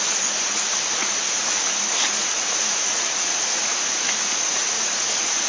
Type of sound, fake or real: fake